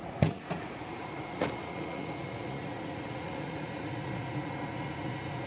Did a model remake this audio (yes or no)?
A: yes